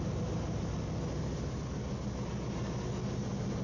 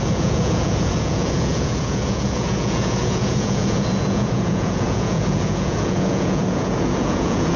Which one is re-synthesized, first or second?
second